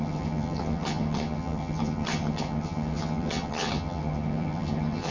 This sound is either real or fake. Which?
fake